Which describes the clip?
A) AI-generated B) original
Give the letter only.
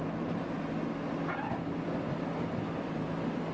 B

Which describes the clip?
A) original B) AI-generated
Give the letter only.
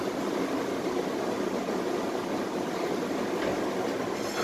A